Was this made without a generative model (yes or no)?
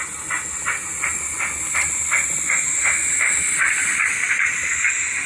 yes